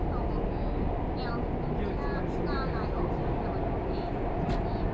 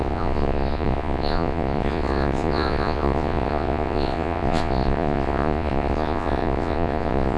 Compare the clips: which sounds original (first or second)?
first